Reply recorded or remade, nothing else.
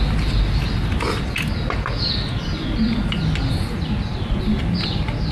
recorded